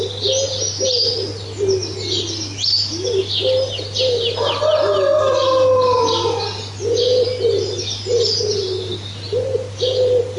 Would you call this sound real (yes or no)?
yes